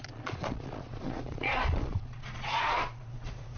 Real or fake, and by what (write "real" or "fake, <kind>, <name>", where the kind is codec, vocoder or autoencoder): fake, vocoder, Vocos